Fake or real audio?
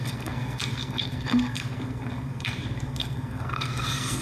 fake